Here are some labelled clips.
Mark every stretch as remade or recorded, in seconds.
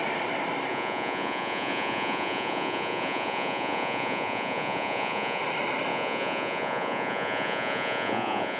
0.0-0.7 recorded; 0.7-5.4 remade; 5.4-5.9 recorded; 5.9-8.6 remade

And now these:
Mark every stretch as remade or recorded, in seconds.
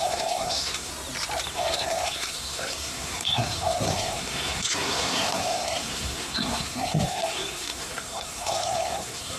0.0-0.9 remade; 0.9-1.5 recorded; 1.5-9.4 remade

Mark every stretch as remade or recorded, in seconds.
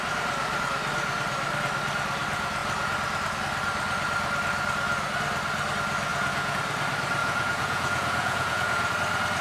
0.0-6.1 recorded; 6.1-6.6 remade; 6.6-7.2 recorded; 7.2-8.9 remade; 8.9-9.4 recorded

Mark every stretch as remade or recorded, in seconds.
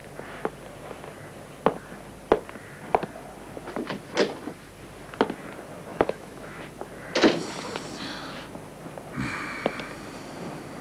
0.0-5.9 recorded; 5.9-6.6 remade; 6.6-10.8 recorded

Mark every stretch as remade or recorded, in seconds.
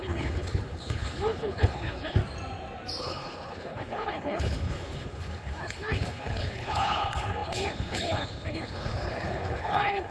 0.0-2.2 remade; 2.2-3.0 recorded; 3.0-10.1 remade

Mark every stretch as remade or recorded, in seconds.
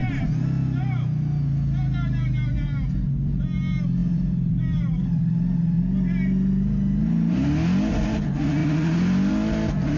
0.0-4.0 recorded; 4.0-5.8 remade; 5.8-8.6 recorded; 8.6-9.3 remade; 9.3-10.0 recorded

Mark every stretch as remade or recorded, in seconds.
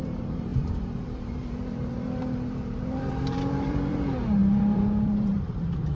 0.0-6.0 remade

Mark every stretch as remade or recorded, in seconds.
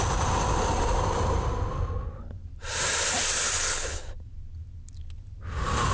0.0-3.6 recorded; 3.6-4.1 remade; 4.1-5.9 recorded